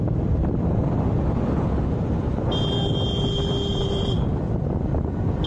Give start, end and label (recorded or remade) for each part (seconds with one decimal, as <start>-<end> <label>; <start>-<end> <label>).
0.0-3.7 recorded; 3.7-4.3 remade; 4.3-5.5 recorded